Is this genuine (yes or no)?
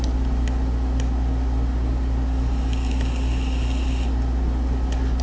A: yes